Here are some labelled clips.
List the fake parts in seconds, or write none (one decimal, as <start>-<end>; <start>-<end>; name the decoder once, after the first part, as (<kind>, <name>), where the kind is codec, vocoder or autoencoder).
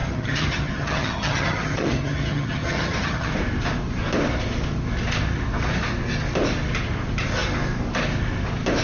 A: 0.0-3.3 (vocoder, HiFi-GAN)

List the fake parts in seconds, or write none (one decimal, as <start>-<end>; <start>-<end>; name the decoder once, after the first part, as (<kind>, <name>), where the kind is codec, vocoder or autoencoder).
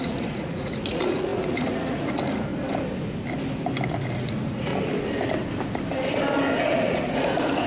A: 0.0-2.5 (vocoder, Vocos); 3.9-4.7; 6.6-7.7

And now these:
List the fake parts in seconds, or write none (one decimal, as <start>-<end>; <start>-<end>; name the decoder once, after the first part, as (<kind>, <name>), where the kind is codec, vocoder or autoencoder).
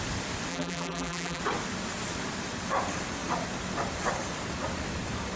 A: 0.5-1.4 (vocoder, BigVGAN v2)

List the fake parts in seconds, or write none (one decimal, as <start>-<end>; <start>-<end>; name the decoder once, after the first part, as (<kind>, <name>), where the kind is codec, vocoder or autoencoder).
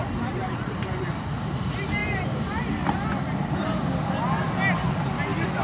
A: none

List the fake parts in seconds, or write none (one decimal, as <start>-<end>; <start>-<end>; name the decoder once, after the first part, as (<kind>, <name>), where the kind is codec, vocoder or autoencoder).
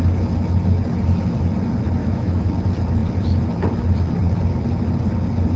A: 2.0-2.5 (autoencoder, DAC-VAE)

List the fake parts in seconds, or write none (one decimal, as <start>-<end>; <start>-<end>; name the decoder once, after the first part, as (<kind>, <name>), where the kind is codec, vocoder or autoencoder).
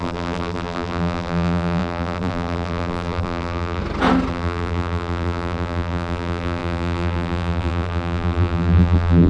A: 0.0-3.8 (vocoder, BigVGAN v2); 4.3-9.3